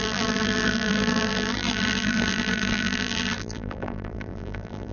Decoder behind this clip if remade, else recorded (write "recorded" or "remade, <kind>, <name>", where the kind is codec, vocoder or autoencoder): remade, vocoder, BigVGAN v2